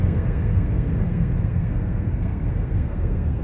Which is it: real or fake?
fake